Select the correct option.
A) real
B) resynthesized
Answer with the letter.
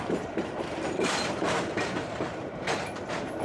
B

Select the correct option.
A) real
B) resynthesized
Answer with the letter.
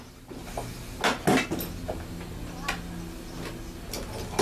A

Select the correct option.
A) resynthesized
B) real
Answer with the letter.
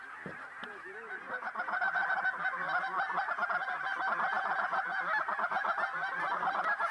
B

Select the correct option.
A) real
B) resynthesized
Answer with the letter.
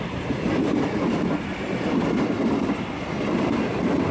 B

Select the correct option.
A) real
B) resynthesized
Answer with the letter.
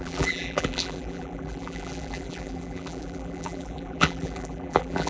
B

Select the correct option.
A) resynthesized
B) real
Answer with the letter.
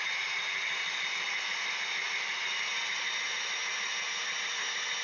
B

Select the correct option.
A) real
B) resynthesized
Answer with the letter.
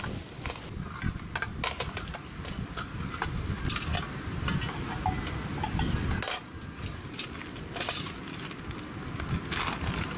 A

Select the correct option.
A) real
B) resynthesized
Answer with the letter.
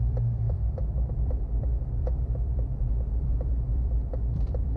B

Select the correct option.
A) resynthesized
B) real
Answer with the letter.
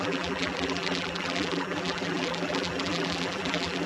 A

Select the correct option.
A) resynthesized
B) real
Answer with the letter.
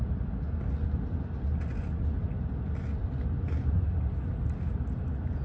B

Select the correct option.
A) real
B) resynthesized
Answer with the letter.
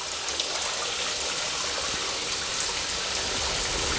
A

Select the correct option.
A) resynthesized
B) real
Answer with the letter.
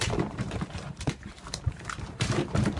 A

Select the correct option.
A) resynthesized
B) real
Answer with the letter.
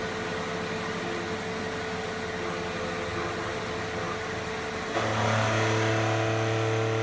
B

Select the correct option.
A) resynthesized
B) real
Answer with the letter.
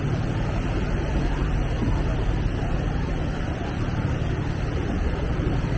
A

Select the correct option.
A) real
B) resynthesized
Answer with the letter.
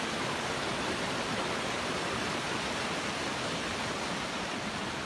B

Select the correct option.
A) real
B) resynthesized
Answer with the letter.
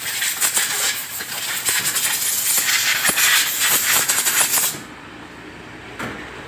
A